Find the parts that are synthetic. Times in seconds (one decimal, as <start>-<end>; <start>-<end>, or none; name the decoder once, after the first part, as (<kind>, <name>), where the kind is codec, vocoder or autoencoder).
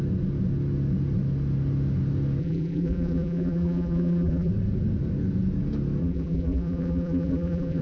2.4-4.5 (vocoder, BigVGAN v2); 6.0-7.8